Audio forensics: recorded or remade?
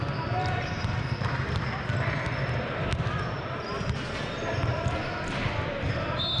recorded